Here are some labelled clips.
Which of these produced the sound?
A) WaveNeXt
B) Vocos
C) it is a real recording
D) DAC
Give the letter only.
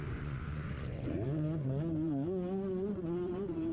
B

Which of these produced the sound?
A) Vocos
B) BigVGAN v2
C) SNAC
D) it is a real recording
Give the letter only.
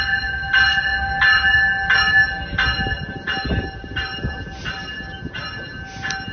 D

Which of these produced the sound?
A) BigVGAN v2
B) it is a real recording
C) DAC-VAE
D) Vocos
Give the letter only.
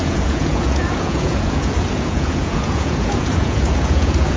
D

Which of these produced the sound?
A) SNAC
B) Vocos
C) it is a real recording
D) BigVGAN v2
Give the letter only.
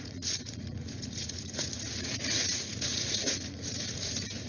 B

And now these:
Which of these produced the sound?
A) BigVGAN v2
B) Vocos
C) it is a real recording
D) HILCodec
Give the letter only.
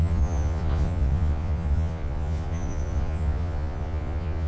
B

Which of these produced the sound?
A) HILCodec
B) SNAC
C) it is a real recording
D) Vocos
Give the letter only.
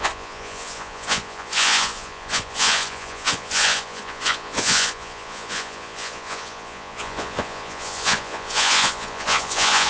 D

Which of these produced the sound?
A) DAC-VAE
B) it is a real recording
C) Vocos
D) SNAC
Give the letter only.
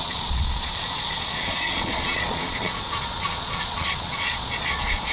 C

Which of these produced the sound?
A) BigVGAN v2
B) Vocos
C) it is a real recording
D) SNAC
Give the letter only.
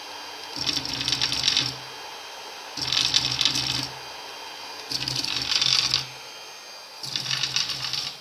C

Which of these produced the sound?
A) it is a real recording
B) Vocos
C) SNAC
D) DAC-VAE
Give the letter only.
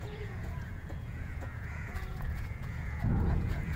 B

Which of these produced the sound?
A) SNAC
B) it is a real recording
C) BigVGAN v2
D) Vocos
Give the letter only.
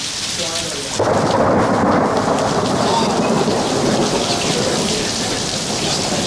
B